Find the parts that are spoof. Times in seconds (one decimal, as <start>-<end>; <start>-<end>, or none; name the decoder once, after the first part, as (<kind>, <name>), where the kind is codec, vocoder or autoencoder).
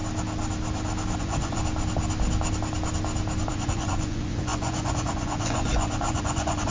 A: 1.2-1.6 (vocoder, Vocos); 3.5-6.7